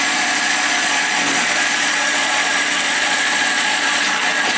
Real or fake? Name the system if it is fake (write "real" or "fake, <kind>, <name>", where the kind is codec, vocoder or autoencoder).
fake, vocoder, Vocos